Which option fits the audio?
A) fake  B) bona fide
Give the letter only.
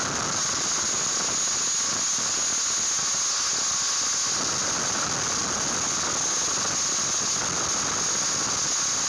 B